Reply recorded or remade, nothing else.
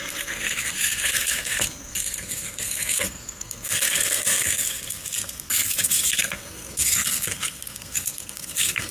remade